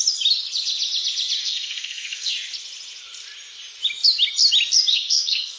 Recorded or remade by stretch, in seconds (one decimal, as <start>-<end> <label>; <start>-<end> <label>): 0.0-1.4 recorded; 1.4-2.3 remade; 2.3-4.9 recorded; 4.9-5.6 remade